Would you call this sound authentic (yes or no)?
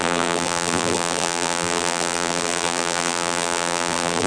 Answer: no